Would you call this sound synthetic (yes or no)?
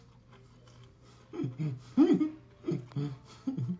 no